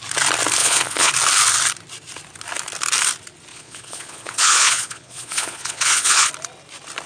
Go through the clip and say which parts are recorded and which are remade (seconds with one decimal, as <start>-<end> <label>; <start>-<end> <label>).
0.0-0.6 recorded; 0.6-1.1 remade; 1.1-3.5 recorded; 3.5-6.3 remade; 6.3-7.1 recorded